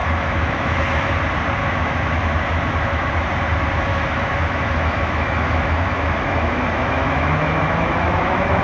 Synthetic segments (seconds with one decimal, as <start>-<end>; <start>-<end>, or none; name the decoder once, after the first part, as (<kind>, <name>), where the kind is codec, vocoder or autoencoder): 0.0-1.1 (autoencoder, DAC-VAE); 1.6-3.1; 3.9-8.6